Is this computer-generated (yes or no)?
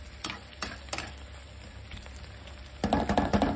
no